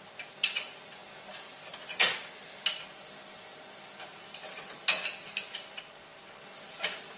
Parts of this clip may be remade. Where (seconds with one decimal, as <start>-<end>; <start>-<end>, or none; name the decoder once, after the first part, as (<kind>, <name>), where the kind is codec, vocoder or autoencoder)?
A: none